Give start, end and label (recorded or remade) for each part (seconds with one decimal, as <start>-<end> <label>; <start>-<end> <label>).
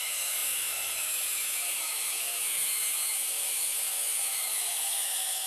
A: 0.0-5.5 remade